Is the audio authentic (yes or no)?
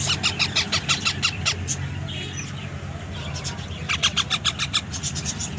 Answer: yes